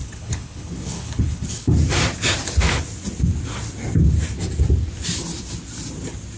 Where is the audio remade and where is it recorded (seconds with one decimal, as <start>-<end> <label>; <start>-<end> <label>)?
0.0-1.7 remade; 1.7-6.4 recorded